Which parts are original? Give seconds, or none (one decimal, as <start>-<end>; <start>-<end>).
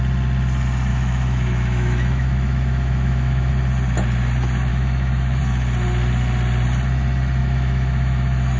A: 0.0-0.9; 3.5-4.7; 5.4-7.4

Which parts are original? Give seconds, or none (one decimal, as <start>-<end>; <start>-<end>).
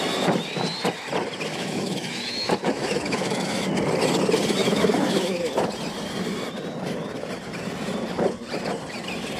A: 0.0-1.5; 3.7-4.6; 5.5-9.4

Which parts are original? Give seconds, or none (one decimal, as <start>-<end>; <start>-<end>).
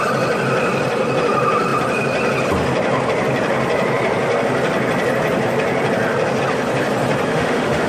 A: 0.0-7.3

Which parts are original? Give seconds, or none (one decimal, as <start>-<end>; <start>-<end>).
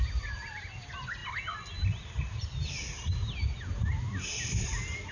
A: 0.0-5.1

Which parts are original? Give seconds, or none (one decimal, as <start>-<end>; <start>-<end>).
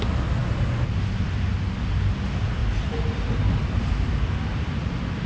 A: 0.0-5.3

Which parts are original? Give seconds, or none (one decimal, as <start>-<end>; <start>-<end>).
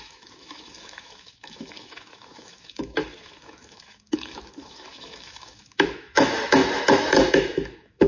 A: none